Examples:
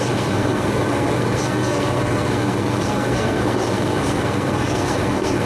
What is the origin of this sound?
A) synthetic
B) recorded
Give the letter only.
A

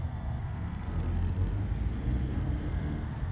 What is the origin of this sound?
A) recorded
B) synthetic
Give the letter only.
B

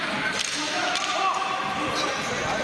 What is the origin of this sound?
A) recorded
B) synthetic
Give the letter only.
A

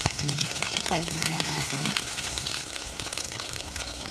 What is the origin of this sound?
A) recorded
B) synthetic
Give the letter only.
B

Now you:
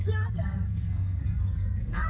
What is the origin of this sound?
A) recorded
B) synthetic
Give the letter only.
B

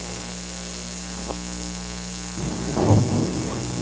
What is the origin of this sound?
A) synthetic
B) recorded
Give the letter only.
A